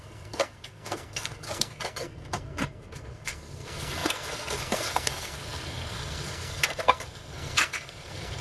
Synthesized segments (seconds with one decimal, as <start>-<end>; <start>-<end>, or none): 0.0-8.4